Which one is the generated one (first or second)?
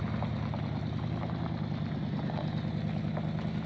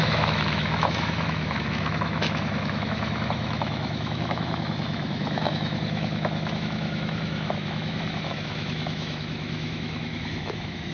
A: second